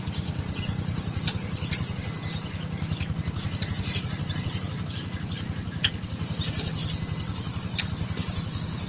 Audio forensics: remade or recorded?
recorded